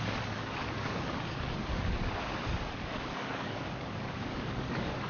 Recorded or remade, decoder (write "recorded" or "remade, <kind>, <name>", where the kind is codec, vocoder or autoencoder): remade, codec, DAC